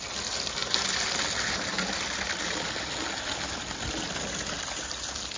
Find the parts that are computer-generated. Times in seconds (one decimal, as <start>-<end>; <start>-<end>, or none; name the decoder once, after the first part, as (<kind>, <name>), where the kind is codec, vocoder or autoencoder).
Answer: none